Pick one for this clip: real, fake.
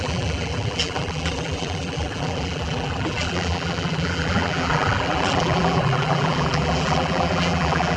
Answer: fake